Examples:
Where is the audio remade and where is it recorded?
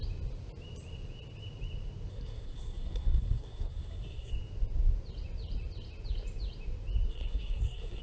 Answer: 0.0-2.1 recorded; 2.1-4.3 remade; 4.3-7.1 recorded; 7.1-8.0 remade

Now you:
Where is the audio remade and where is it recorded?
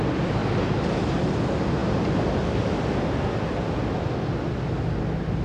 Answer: 0.0-5.4 recorded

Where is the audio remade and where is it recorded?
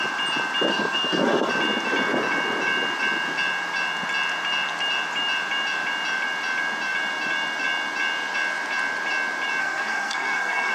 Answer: 0.0-0.7 recorded; 0.7-1.5 remade; 1.5-9.6 recorded; 9.6-10.7 remade